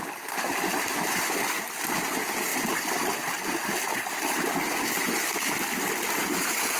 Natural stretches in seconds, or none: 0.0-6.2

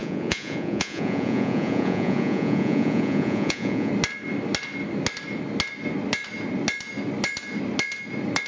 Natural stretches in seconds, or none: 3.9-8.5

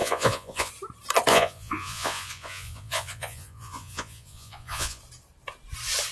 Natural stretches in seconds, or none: 0.7-1.3; 5.0-6.1

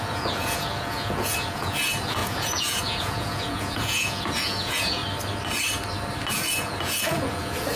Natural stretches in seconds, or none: 5.0-6.3

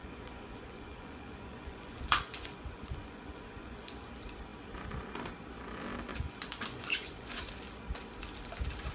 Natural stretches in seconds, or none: 4.1-6.1; 7.4-8.9